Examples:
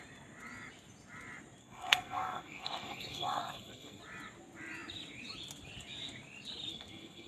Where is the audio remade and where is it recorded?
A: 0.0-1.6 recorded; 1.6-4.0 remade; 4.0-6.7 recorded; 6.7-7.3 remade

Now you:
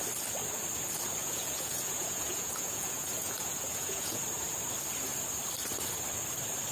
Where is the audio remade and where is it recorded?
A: 0.0-1.2 recorded; 1.2-4.2 remade; 4.2-6.7 recorded

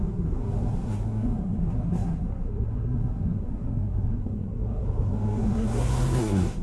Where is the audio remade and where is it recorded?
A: 0.0-6.6 remade

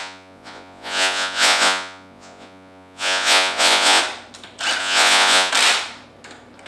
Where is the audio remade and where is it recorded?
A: 0.0-4.0 remade; 4.0-4.8 recorded; 4.8-5.5 remade; 5.5-6.7 recorded